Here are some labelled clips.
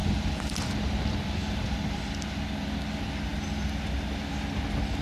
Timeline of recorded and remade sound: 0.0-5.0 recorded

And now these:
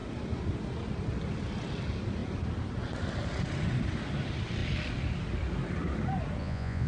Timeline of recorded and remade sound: 0.0-6.4 recorded; 6.4-6.9 remade